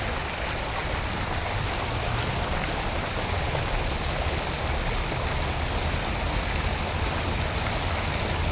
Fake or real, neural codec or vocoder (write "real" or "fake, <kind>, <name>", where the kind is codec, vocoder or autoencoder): real